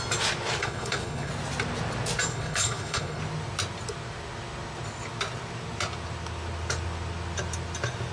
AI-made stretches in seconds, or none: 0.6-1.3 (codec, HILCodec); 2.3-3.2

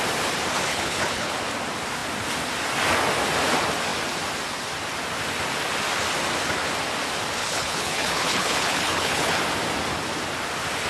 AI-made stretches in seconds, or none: 0.7-1.4 (codec, HILCodec); 7.4-9.4